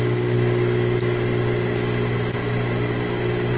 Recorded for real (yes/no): yes